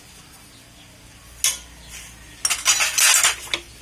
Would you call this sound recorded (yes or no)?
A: yes